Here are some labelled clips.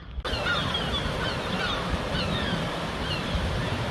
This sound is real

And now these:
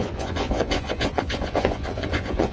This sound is fake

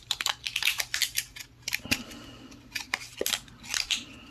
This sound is real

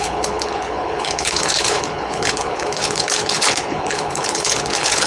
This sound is fake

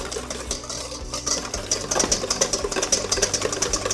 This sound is real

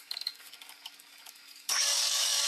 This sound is fake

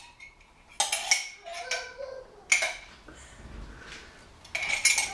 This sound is real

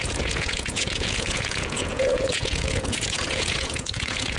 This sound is fake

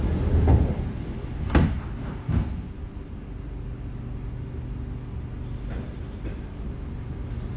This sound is real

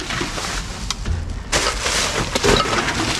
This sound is real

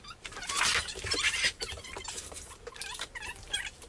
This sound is fake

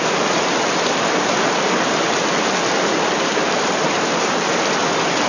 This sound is fake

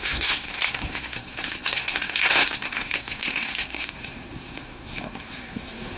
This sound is fake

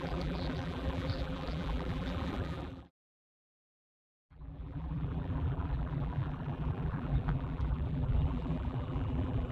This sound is fake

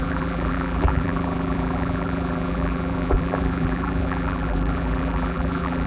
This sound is fake